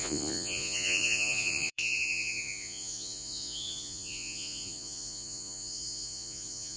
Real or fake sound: fake